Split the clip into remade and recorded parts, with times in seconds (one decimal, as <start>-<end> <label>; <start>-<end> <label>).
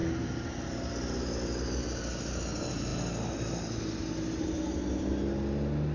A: 0.0-5.9 recorded